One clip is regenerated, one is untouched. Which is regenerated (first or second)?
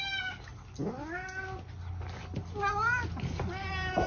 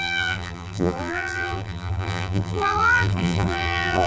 second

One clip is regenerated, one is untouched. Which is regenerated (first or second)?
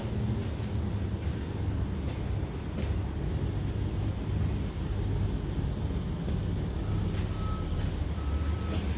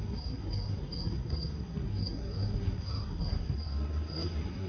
second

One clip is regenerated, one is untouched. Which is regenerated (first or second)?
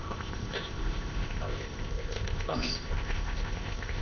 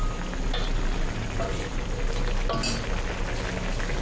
first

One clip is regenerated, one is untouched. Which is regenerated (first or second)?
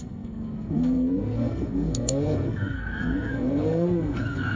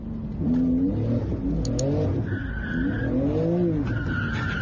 first